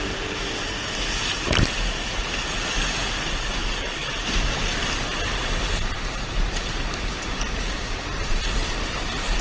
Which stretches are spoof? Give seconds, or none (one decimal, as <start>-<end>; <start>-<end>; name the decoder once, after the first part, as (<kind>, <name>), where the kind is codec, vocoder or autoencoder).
3.6-4.1 (codec, DAC)